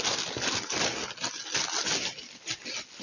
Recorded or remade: recorded